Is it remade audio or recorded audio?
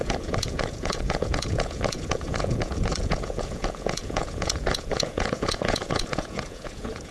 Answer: remade